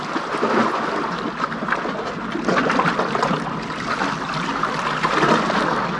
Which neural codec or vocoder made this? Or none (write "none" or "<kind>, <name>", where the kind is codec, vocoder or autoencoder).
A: none